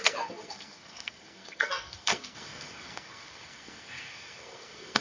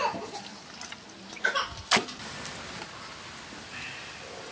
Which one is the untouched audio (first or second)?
second